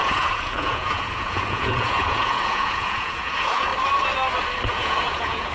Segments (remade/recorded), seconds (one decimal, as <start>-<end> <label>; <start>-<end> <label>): 0.0-3.7 remade; 3.7-4.7 recorded; 4.7-5.5 remade